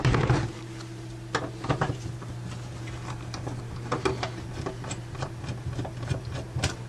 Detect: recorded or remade recorded